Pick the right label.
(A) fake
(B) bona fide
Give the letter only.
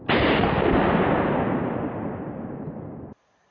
B